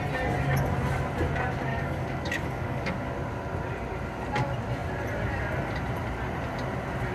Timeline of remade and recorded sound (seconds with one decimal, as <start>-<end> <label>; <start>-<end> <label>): 0.0-1.7 recorded; 1.7-3.1 remade; 3.1-7.1 recorded